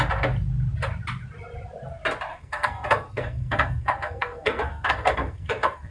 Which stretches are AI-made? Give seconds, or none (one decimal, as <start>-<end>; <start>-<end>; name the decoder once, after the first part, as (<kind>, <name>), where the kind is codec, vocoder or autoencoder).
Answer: 2.3-5.9 (codec, SNAC)

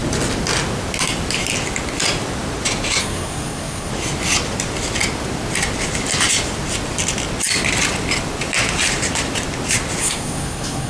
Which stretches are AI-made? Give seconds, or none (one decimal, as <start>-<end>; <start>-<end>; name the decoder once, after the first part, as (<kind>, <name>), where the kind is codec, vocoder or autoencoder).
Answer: 3.0-3.9 (codec, SNAC); 10.0-10.9

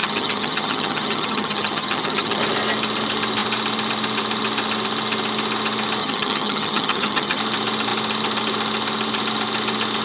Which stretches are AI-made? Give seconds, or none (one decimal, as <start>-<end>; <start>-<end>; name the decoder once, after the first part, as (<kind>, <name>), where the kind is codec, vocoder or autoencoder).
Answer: 0.0-2.4 (vocoder, HiFi-GAN); 6.0-7.4

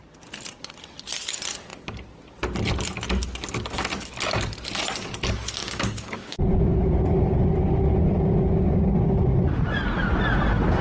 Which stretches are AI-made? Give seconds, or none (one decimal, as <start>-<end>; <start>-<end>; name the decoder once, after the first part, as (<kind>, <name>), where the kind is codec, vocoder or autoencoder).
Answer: 5.6-6.4 (codec, DAC)